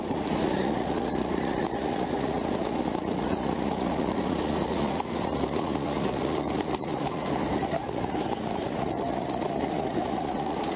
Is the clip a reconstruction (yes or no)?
yes